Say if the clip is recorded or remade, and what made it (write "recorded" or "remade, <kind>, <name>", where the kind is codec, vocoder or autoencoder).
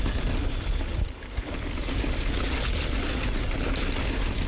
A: recorded